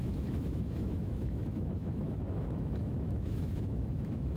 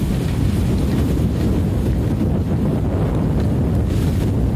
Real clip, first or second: second